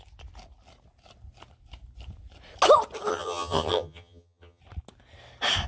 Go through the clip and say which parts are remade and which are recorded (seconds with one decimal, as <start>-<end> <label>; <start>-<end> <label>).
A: 0.0-3.1 recorded; 3.1-4.6 remade; 4.6-5.7 recorded